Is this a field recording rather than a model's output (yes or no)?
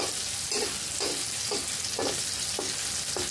yes